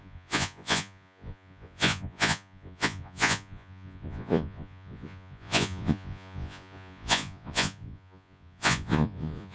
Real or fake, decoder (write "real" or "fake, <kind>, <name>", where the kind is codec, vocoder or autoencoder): fake, vocoder, Vocos